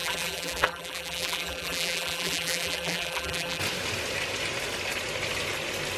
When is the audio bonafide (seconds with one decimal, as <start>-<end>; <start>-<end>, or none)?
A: 3.6-6.0